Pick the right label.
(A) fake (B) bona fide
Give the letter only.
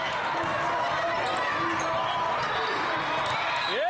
B